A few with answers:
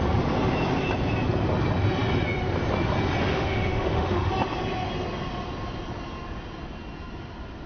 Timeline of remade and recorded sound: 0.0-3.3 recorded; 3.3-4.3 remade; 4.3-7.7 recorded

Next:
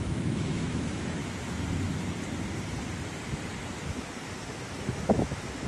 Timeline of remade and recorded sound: 0.0-1.2 remade; 1.2-4.6 recorded; 4.6-5.7 remade